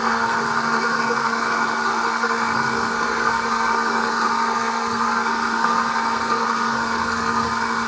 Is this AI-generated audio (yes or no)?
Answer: yes